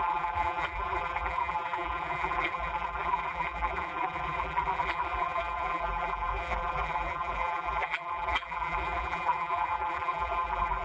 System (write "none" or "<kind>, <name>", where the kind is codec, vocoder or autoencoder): vocoder, BigVGAN v2